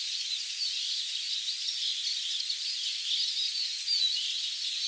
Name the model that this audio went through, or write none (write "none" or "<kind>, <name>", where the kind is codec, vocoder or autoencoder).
none